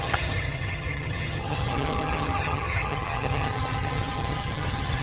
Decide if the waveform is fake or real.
fake